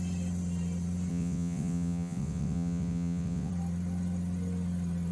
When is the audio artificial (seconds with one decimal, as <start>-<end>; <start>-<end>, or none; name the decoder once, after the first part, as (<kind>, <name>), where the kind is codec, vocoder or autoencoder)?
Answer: 1.1-3.5 (vocoder, WaveNeXt)